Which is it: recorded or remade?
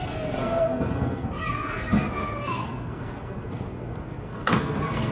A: remade